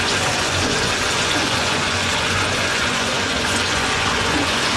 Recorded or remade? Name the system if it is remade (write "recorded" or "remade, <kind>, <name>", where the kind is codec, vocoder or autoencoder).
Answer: remade, vocoder, Vocos